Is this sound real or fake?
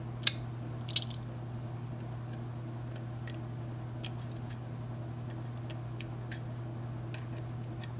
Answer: real